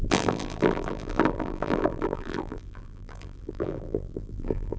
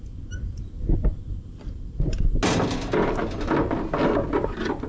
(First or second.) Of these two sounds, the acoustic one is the second